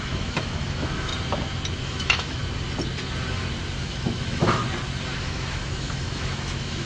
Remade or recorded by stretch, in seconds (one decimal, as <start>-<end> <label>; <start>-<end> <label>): 0.0-1.1 remade; 1.1-1.8 recorded; 1.8-2.4 remade; 2.4-3.8 recorded; 3.8-4.6 remade; 4.6-5.2 recorded; 5.2-6.9 remade